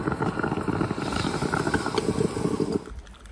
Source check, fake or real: real